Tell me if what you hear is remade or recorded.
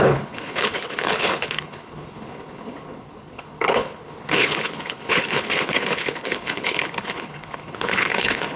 remade